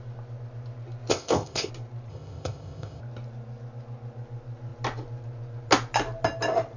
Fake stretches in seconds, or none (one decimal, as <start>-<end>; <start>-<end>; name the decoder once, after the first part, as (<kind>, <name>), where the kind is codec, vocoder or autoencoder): 1.1-1.7 (codec, ZipCodec); 2.1-3.0